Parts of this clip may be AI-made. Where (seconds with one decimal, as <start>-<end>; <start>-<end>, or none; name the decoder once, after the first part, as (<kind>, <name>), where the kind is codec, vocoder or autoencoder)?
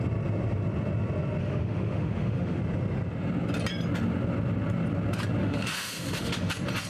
1.4-2.6 (autoencoder, DAC-VAE); 5.4-6.5